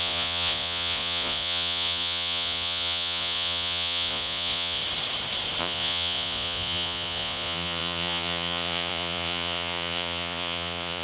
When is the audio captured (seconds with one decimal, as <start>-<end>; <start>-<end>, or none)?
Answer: 4.8-5.6